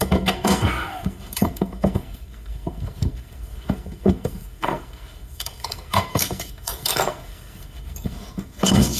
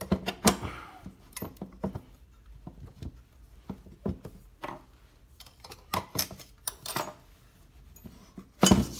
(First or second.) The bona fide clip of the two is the second